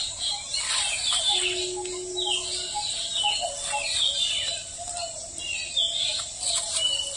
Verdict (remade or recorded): recorded